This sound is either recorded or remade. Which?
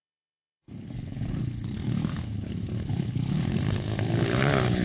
remade